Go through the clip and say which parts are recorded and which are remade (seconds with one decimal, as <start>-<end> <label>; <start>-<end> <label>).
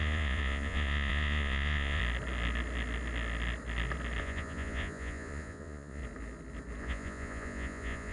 0.0-2.0 remade; 2.0-4.2 recorded; 4.2-6.0 remade; 6.0-6.8 recorded; 6.8-8.1 remade